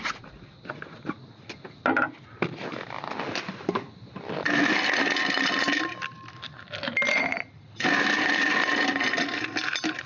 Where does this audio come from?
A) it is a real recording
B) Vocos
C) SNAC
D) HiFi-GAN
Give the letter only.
A